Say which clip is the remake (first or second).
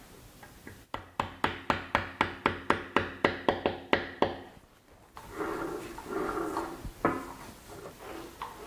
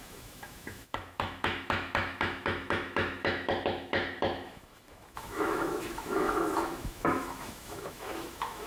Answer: second